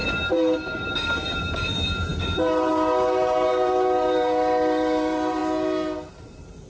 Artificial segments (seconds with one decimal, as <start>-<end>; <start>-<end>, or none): 0.0-5.4; 6.1-6.7